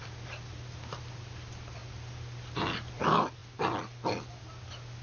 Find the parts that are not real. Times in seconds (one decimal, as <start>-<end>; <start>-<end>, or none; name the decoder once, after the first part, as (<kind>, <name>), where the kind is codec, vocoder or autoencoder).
none